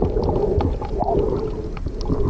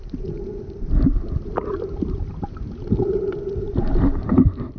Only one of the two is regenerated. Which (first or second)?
second